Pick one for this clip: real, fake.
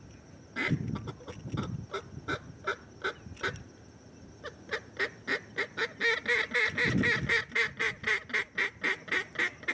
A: real